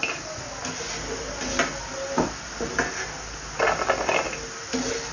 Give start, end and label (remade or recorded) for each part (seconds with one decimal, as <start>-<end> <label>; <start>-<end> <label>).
0.0-5.1 recorded